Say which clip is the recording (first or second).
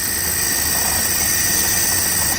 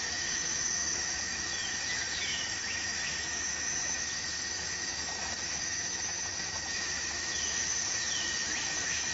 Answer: first